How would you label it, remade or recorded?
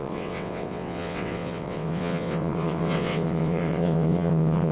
remade